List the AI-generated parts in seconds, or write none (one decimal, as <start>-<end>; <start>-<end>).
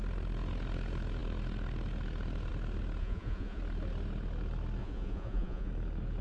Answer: 3.0-3.6; 4.8-5.7